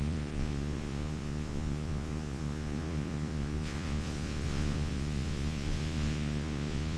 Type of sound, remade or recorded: remade